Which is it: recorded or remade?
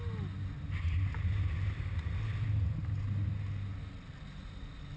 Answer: recorded